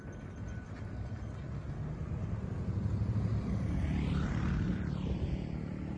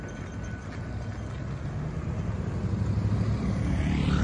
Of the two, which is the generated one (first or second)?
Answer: first